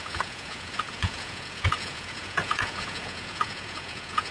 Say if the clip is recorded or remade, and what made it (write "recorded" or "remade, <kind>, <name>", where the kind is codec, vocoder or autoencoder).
remade, vocoder, Vocos